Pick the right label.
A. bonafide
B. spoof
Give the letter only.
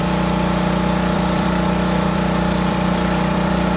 B